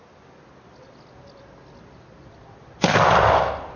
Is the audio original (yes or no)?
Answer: yes